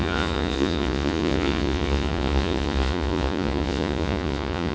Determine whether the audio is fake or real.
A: fake